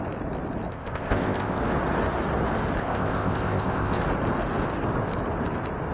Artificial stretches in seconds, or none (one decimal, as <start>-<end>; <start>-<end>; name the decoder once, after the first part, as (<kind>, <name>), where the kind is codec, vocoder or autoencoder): 0.7-1.6 (codec, ZipCodec); 2.8-4.0

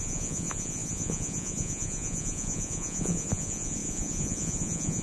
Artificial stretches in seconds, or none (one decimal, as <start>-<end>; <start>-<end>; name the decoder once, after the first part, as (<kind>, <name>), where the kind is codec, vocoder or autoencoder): 0.0-5.0 (vocoder, Vocos)